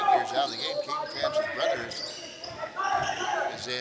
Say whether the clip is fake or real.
real